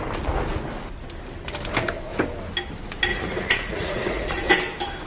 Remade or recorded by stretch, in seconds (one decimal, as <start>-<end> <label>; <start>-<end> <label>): 0.0-3.1 recorded; 3.1-4.5 remade; 4.5-5.1 recorded

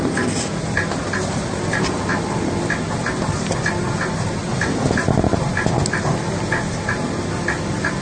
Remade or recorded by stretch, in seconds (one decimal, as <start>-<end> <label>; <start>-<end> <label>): 0.0-4.4 recorded; 4.4-5.0 remade; 5.0-8.0 recorded